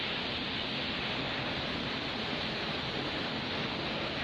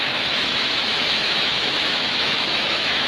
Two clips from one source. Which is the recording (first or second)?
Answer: first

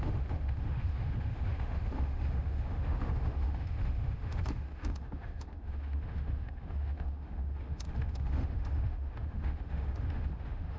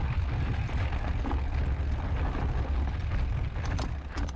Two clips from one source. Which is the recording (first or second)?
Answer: second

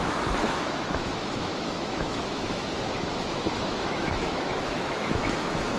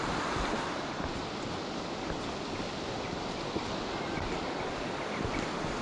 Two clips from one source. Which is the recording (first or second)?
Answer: second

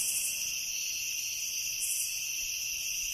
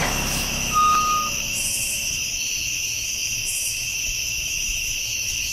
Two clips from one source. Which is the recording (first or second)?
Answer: first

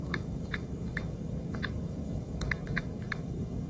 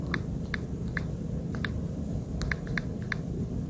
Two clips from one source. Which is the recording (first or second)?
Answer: second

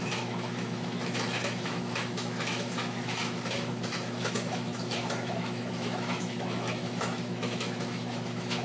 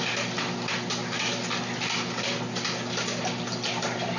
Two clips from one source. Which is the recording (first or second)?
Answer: second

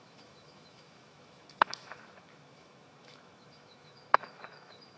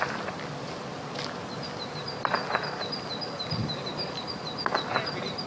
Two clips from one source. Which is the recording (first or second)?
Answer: second